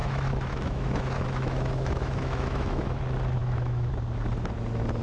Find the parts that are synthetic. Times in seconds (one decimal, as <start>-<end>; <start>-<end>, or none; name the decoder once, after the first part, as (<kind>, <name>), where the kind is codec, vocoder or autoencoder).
0.0-3.0 (autoencoder, DAC-VAE); 3.4-3.9